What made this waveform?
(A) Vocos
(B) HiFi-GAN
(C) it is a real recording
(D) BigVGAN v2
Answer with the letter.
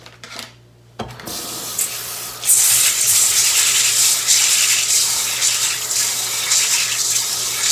C